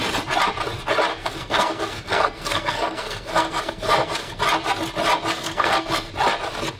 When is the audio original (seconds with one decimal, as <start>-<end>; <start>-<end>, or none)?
0.0-1.1; 4.4-5.3; 6.1-6.8